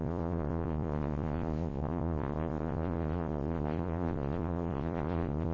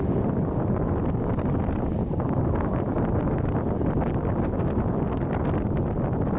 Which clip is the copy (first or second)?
first